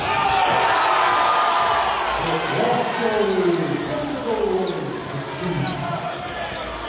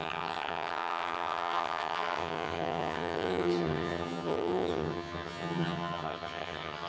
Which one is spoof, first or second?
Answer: second